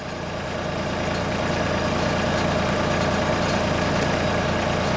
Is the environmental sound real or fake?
real